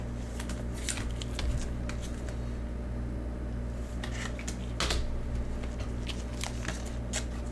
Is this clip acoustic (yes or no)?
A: yes